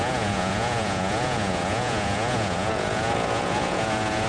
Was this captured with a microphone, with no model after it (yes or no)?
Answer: no